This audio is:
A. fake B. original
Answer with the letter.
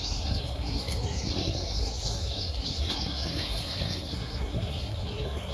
A